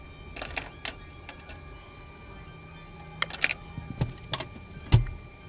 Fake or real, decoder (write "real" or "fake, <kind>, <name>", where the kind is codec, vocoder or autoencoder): real